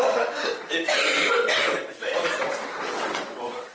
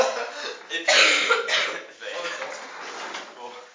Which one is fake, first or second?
first